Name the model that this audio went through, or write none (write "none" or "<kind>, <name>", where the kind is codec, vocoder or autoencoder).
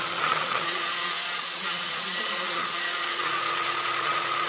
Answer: vocoder, Vocos